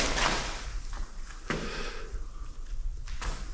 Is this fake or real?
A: real